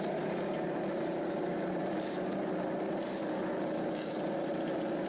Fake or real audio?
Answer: fake